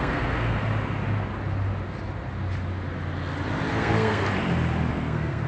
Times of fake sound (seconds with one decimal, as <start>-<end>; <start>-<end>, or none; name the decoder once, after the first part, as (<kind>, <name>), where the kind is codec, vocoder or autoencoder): 0.0-0.6 (codec, SNAC); 3.7-4.3; 4.9-5.5